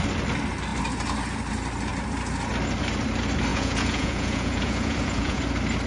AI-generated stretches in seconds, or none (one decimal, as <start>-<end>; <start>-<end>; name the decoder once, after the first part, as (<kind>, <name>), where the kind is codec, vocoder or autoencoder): 3.5-5.4 (vocoder, Vocos)